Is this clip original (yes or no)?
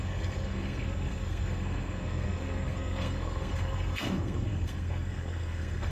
no